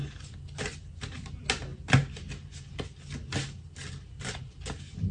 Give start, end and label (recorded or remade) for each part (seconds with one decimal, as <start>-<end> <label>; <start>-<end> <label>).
0.0-5.1 recorded